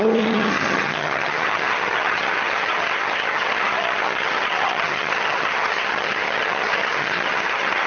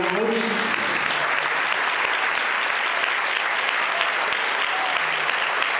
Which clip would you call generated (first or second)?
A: first